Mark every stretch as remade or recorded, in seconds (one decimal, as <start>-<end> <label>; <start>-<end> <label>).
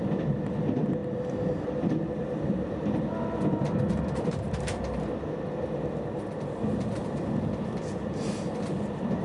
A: 0.0-1.0 recorded; 1.0-1.6 remade; 1.6-2.0 recorded; 2.0-2.7 remade; 2.7-7.0 recorded; 7.0-8.0 remade; 8.0-9.2 recorded